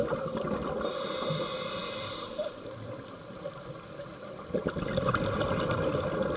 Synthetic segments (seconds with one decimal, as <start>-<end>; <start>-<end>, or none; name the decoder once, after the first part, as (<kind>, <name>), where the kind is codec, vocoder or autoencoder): none

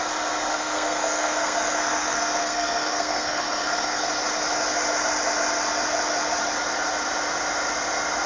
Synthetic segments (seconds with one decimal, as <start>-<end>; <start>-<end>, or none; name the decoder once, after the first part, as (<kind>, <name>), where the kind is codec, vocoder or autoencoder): 0.5-4.1 (codec, SNAC)

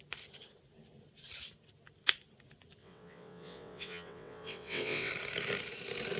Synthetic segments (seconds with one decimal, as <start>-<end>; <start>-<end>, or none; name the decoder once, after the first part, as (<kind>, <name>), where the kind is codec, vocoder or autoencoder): 2.8-5.1 (vocoder, WaveNeXt)

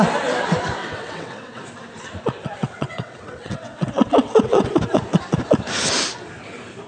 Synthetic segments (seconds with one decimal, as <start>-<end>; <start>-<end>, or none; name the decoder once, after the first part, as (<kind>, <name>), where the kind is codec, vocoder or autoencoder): 0.8-1.6 (vocoder, WaveNeXt); 2.6-4.7